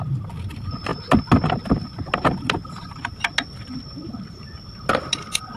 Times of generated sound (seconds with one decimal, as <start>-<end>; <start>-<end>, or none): 0.0-0.9; 4.3-5.6